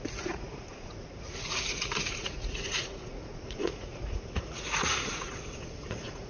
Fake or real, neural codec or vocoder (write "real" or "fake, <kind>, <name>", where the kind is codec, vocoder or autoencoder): fake, vocoder, Vocos